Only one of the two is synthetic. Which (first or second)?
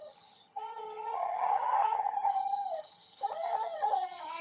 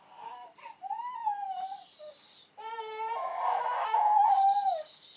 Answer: first